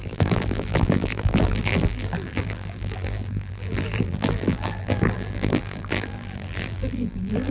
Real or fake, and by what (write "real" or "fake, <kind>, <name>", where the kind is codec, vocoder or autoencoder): fake, vocoder, BigVGAN v2